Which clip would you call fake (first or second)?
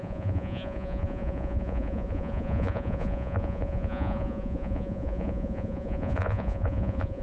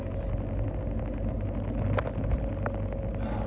first